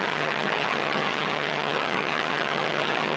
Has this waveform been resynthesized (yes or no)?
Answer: yes